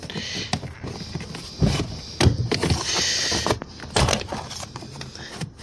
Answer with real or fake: real